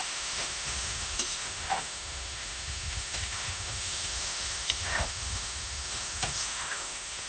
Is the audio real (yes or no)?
no